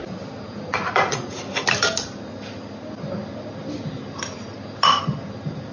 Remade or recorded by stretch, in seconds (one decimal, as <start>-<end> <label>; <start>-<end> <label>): 0.0-0.7 recorded; 0.7-1.4 remade; 1.4-5.7 recorded

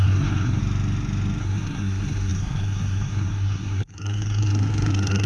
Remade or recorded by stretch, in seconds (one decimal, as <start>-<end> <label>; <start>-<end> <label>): 0.0-0.6 remade; 0.6-1.4 recorded; 1.4-5.3 remade

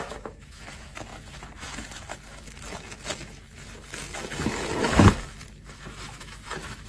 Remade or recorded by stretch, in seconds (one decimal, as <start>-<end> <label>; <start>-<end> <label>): 0.0-6.9 remade

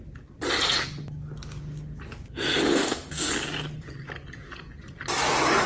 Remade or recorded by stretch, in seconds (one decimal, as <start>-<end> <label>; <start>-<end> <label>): 0.0-2.7 recorded; 2.7-3.3 remade; 3.3-5.7 recorded

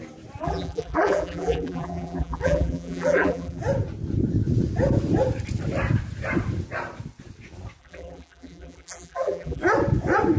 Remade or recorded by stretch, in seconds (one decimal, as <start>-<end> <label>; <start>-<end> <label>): 0.0-0.4 recorded; 0.4-3.6 remade; 3.6-7.8 recorded; 7.8-9.6 remade; 9.6-10.4 recorded

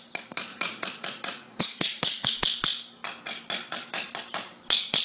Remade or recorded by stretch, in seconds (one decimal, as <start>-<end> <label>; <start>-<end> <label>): 0.0-0.5 recorded; 0.5-2.4 remade; 2.4-5.0 recorded

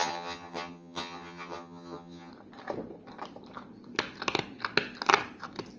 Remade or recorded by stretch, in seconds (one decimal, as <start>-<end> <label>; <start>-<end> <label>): 0.0-2.3 remade; 2.3-5.8 recorded

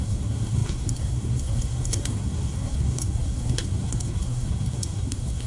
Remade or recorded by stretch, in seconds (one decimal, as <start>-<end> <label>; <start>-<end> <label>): 0.0-5.5 remade